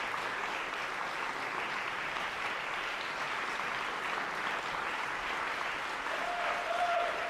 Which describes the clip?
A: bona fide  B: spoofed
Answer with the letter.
B